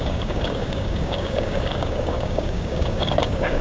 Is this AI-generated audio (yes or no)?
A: yes